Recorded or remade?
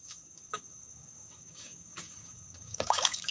remade